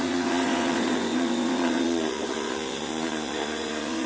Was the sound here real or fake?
fake